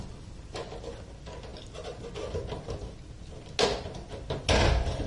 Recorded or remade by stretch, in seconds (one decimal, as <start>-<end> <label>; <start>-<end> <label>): 0.0-5.1 recorded